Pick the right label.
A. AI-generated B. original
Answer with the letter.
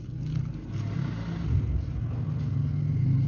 B